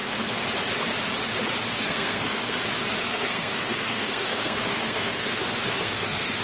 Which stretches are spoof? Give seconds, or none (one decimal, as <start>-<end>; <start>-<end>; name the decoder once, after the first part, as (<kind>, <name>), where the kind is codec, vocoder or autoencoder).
1.7-2.6 (codec, SNAC); 3.0-6.4